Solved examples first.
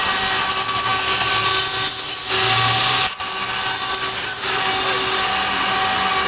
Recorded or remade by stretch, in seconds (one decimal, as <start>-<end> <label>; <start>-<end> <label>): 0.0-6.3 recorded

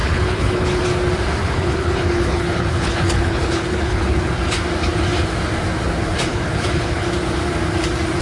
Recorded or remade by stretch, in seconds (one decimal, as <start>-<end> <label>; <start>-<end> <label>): 0.0-0.8 remade; 0.8-1.4 recorded; 1.4-4.3 remade; 4.3-6.3 recorded; 6.3-7.1 remade; 7.1-8.2 recorded

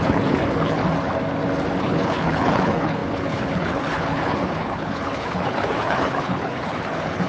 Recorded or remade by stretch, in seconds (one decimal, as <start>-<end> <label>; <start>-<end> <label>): 0.0-0.8 remade; 0.8-1.8 recorded; 1.8-7.3 remade

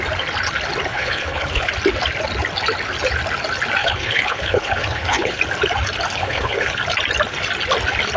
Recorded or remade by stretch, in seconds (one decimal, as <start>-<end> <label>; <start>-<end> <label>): 0.0-0.9 recorded; 0.9-1.7 remade; 1.7-3.8 recorded; 3.8-5.4 remade; 5.4-6.2 recorded; 6.2-6.8 remade; 6.8-8.2 recorded

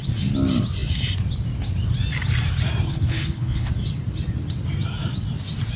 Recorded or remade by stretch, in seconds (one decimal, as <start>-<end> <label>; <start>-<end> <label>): 0.0-2.9 recorded; 2.9-3.7 remade; 3.7-5.8 recorded

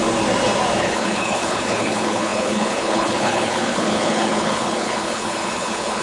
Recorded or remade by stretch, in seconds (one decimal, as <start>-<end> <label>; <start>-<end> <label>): 0.0-0.8 recorded; 0.8-6.0 remade

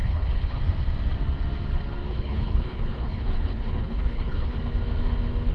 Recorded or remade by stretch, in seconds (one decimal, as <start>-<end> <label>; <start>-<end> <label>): 0.0-0.6 remade; 0.6-2.1 recorded; 2.1-4.6 remade; 4.6-5.5 recorded

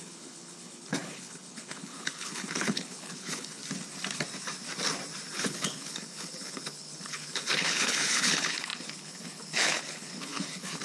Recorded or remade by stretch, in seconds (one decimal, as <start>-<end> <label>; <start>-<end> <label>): 0.0-3.6 remade; 3.6-5.3 recorded; 5.3-10.8 remade